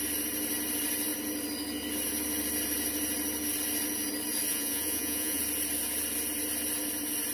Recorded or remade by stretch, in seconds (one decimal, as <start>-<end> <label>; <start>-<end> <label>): 0.0-4.5 recorded; 4.5-5.4 remade; 5.4-7.3 recorded